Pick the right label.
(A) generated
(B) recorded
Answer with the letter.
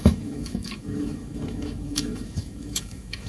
A